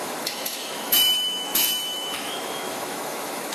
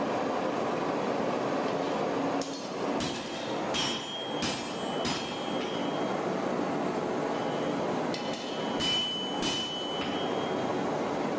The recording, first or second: second